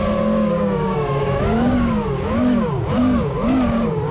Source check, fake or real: fake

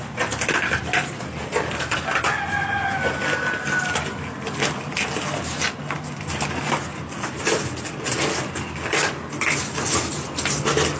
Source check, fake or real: real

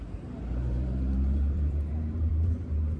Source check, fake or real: fake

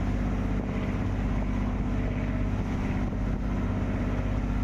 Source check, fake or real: real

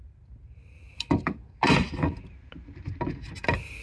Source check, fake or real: real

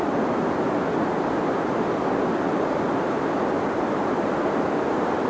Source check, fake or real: real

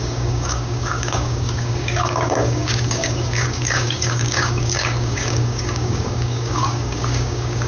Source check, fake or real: fake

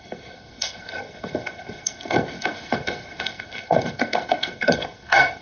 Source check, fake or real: fake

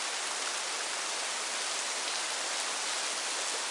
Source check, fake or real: real